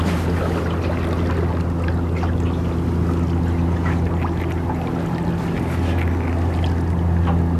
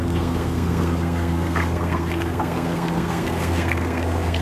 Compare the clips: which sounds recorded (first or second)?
first